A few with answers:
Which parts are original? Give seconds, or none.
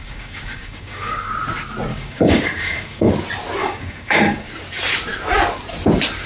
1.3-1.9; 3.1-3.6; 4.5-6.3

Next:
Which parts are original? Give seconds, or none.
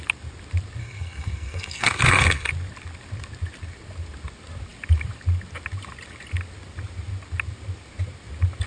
0.0-0.8; 2.5-8.7